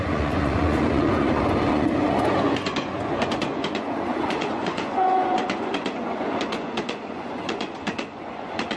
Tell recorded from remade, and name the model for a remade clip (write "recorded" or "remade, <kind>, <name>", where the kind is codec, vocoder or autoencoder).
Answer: remade, vocoder, Vocos